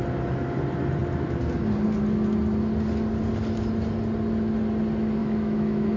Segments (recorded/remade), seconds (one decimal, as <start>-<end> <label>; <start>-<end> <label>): 0.0-5.2 recorded; 5.2-6.0 remade